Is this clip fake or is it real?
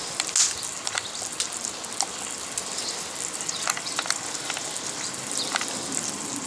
real